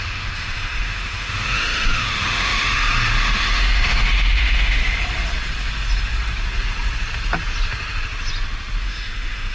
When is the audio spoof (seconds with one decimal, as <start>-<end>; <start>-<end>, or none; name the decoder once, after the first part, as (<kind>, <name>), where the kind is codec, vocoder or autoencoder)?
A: 0.0-4.8 (autoencoder, DAC-VAE); 8.8-9.5